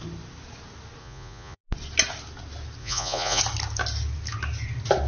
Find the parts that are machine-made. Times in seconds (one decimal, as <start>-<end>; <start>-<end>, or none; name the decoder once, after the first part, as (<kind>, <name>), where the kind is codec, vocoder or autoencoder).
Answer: 1.0-1.6 (vocoder, Vocos); 2.8-3.4